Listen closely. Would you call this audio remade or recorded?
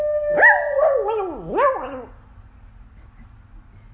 recorded